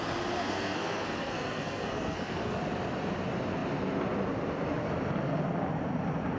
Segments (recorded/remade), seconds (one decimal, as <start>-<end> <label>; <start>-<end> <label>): 0.0-0.4 recorded; 0.4-2.6 remade; 2.6-6.4 recorded